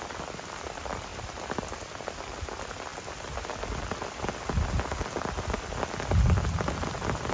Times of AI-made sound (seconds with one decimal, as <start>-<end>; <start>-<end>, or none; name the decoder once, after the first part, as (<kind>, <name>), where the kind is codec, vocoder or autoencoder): none